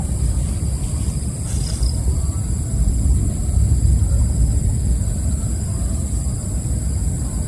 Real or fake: fake